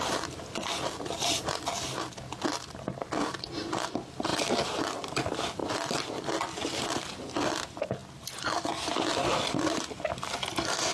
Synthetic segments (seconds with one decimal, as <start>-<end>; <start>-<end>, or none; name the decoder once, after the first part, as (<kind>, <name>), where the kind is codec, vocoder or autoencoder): none